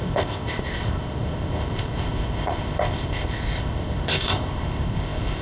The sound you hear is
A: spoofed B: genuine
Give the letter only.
A